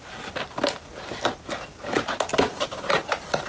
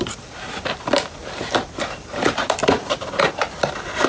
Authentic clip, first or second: first